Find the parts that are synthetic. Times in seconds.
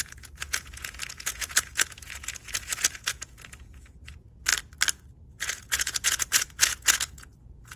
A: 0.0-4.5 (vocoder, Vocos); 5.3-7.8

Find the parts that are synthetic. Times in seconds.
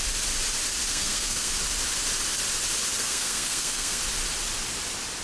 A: 0.9-1.5 (codec, SNAC); 3.0-4.0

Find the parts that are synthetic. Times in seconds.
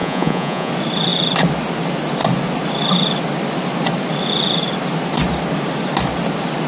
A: 0.0-0.7 (vocoder, Vocos)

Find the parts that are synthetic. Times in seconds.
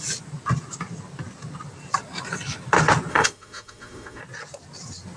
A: 3.1-4.2 (autoencoder, DAC-VAE)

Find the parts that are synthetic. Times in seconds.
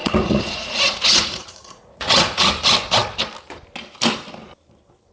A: 0.0-2.5 (vocoder, Vocos)